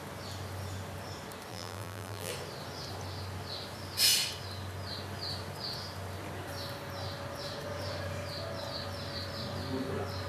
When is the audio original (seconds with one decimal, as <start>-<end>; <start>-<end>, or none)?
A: 0.0-1.5; 2.3-10.3